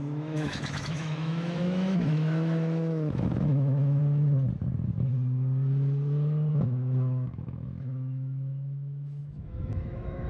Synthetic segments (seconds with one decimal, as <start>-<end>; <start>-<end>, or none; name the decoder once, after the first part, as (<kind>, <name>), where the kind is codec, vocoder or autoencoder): 0.0-4.0 (autoencoder, DAC-VAE); 6.5-10.3